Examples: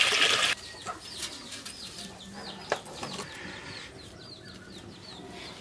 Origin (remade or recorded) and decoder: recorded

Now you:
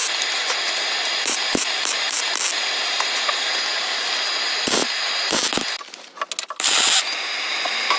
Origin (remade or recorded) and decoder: recorded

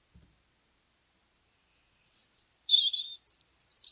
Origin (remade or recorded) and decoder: recorded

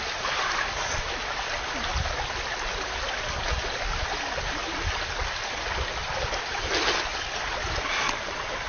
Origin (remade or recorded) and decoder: recorded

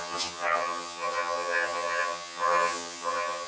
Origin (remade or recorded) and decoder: remade, vocoder, HiFi-GAN